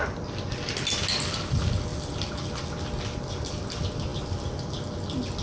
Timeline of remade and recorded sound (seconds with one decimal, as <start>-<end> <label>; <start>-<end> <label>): 0.0-5.4 recorded